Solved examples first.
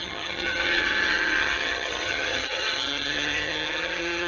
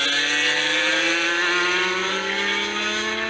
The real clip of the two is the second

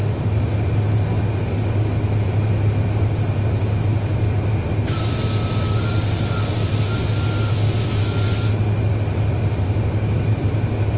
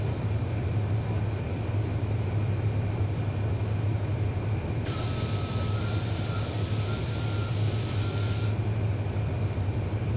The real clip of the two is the first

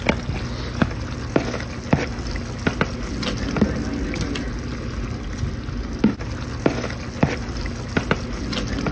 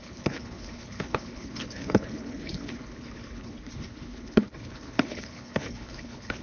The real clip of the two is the first